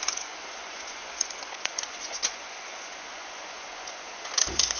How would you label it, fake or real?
fake